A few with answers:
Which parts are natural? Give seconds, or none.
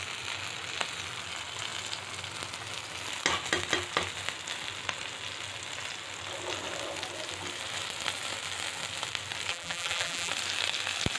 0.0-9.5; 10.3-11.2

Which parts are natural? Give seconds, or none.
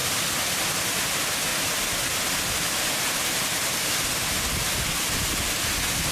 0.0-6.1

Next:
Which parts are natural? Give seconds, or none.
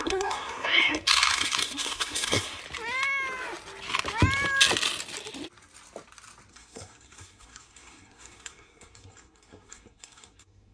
2.6-6.5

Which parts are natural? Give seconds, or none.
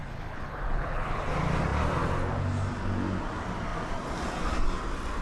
1.2-5.2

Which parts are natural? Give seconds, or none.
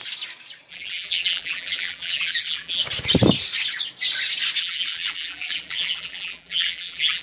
0.0-0.7; 2.8-4.6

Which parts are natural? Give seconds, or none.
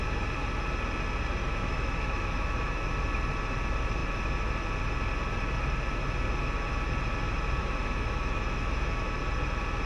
0.0-1.4; 2.9-7.6; 9.2-9.9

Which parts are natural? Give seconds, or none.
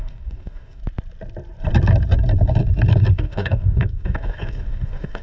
0.8-3.1